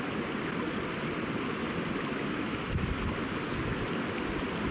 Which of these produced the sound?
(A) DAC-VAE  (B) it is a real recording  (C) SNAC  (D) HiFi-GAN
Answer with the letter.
B